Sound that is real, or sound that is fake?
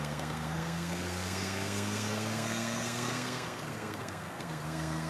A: fake